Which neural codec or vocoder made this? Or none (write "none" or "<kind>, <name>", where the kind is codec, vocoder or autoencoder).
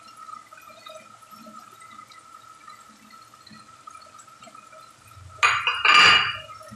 none